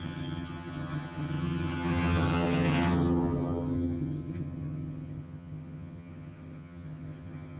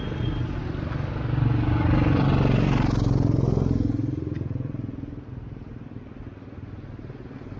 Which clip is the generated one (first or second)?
first